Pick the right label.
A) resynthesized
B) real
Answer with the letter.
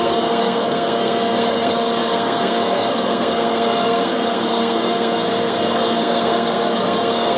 A